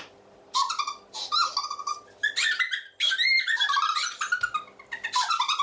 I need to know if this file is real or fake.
real